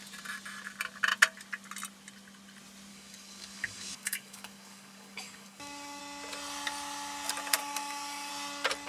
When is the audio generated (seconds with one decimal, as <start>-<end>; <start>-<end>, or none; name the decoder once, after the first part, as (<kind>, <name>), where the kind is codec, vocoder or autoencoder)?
2.9-6.0 (codec, DAC); 7.6-8.3